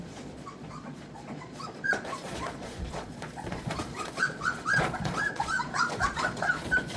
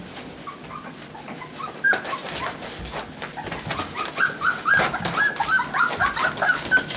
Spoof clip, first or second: first